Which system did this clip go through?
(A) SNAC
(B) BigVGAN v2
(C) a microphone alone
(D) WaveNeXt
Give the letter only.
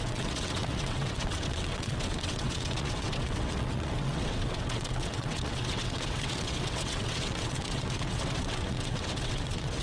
D